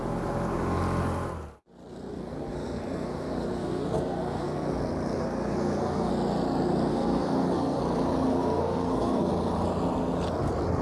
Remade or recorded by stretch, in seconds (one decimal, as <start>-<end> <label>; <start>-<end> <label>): 0.0-2.1 recorded; 2.1-4.8 remade; 4.8-5.2 recorded; 5.2-6.1 remade; 6.1-6.9 recorded; 6.9-7.8 remade; 7.8-8.3 recorded; 8.3-9.3 remade; 9.3-10.8 recorded

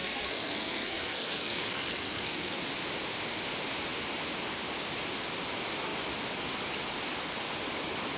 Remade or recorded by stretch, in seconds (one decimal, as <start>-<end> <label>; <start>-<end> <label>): 0.0-2.6 remade; 2.6-8.2 recorded

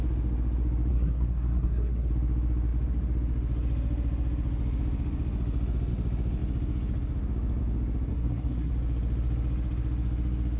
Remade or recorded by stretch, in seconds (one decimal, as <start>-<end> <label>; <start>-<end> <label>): 0.0-0.9 recorded; 0.9-2.1 remade; 2.1-8.1 recorded; 8.1-8.7 remade; 8.7-10.6 recorded

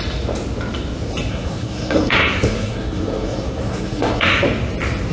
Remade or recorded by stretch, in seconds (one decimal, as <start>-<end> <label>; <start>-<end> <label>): 0.0-1.3 recorded; 1.3-4.4 remade; 4.4-5.1 recorded